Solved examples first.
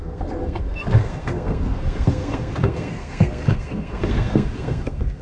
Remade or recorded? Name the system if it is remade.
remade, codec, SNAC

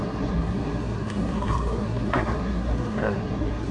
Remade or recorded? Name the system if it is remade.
remade, codec, SNAC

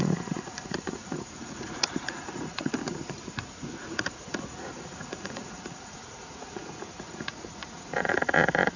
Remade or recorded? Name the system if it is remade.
remade, vocoder, Vocos